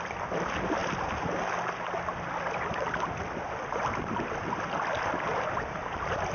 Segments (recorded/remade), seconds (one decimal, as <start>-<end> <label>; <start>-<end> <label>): 0.0-6.3 recorded